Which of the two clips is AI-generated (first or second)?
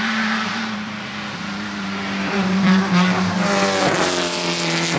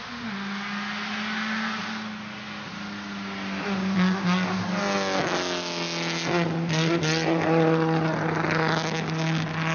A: first